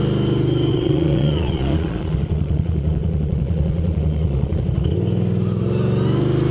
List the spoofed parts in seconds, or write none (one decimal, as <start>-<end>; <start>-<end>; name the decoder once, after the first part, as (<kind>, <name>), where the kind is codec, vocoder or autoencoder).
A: 0.7-4.6 (vocoder, Vocos)